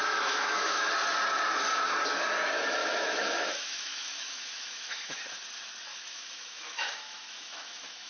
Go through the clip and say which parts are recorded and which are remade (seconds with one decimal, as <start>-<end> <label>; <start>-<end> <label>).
0.0-0.9 remade; 0.9-2.8 recorded; 2.8-5.2 remade; 5.2-5.9 recorded; 5.9-8.1 remade